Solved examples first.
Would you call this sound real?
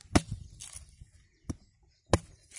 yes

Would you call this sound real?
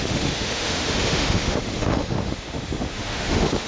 no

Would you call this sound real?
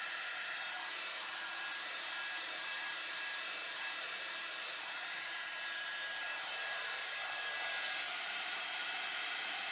no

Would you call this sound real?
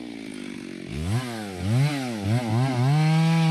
yes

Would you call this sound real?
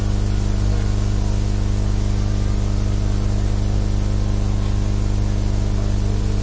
yes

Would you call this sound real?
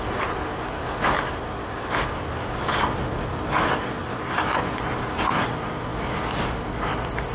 yes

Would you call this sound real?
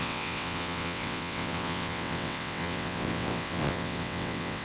no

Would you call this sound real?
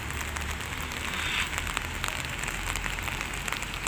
yes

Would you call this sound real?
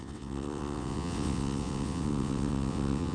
no